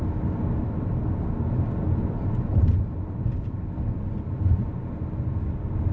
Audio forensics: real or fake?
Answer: real